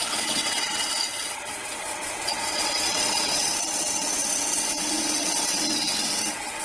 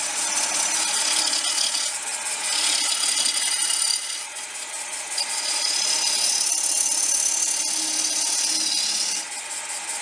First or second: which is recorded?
second